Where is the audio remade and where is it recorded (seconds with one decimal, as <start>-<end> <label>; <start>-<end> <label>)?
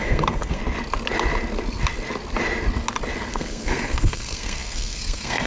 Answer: 0.0-0.6 remade; 0.6-3.3 recorded; 3.3-5.5 remade